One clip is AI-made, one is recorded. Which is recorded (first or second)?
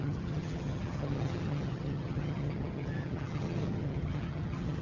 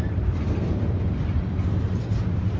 second